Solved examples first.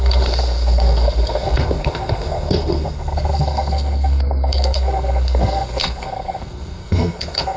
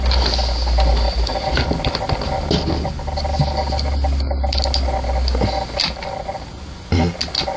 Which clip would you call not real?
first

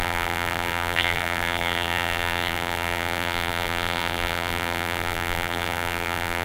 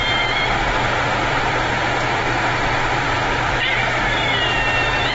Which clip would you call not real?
first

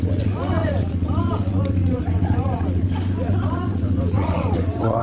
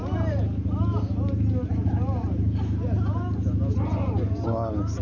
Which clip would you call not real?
first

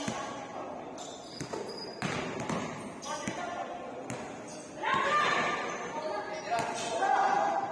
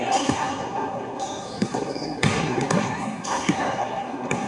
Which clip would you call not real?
second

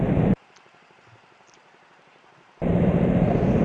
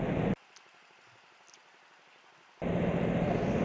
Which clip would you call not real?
first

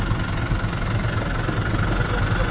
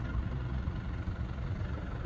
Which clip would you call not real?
second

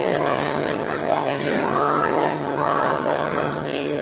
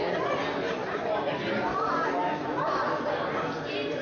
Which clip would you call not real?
first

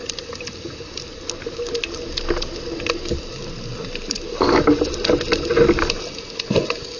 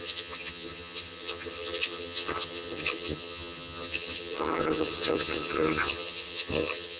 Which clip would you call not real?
second